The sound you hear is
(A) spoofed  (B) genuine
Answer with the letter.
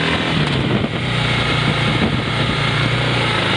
B